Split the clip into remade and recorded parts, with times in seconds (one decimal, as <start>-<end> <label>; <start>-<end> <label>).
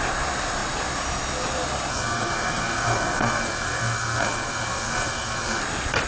0.0-1.9 recorded; 1.9-5.6 remade; 5.6-6.1 recorded